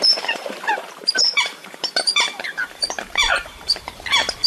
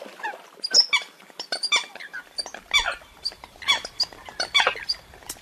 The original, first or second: second